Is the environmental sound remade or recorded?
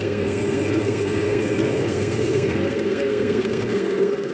remade